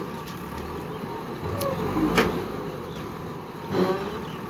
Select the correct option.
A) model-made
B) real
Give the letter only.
B